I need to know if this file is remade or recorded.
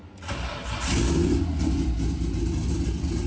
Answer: recorded